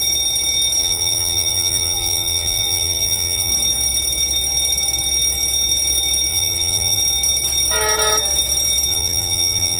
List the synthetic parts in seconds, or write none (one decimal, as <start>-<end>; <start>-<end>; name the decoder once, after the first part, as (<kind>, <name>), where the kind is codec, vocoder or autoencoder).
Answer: 0.8-3.5 (vocoder, BigVGAN v2); 6.3-7.0; 8.9-9.8